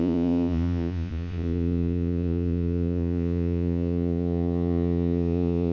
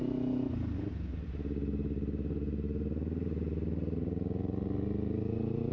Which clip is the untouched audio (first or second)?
second